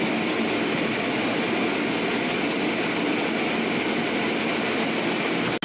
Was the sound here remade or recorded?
recorded